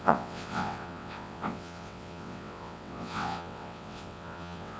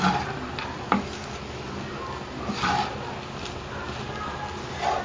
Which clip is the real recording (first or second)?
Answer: second